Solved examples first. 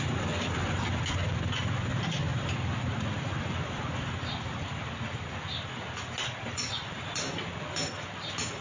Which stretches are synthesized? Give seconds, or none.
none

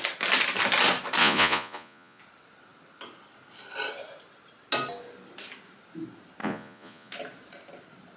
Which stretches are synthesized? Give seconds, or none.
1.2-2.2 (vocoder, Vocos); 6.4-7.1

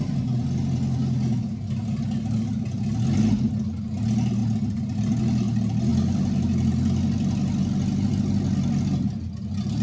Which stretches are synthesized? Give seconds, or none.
none

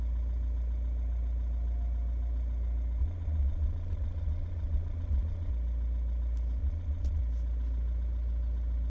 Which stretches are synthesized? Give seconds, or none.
3.0-5.5 (vocoder, Vocos); 6.6-7.2

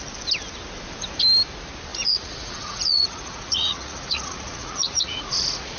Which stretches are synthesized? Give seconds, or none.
1.9-5.8 (vocoder, Vocos)

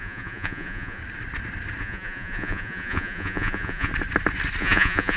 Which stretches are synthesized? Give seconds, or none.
0.0-1.0 (vocoder, Vocos); 1.8-3.9; 4.6-5.2

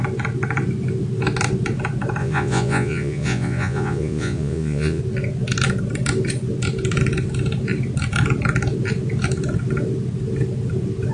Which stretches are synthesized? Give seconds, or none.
2.2-5.0 (vocoder, Vocos)

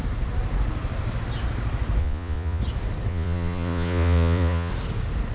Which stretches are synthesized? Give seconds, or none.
2.0-2.6 (vocoder, Vocos); 3.1-4.7